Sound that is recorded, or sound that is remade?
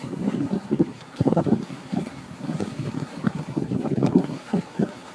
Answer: remade